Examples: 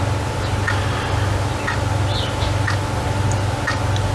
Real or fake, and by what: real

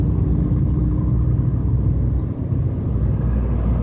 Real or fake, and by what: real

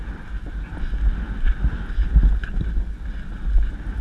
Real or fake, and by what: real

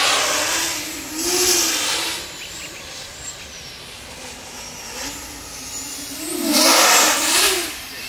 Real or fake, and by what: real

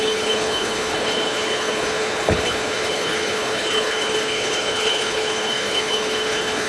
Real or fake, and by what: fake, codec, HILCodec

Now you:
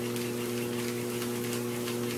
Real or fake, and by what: real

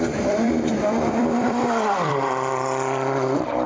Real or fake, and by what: fake, vocoder, BigVGAN v2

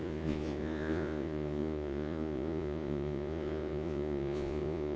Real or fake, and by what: fake, vocoder, Vocos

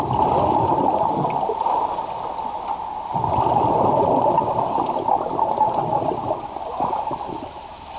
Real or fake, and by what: real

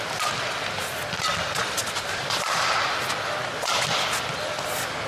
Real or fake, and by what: real